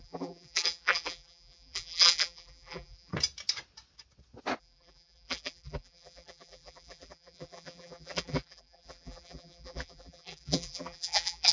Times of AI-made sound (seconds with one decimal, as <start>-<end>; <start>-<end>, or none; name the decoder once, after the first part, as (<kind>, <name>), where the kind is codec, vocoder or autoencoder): 0.0-3.1 (vocoder, BigVGAN v2); 4.6-11.5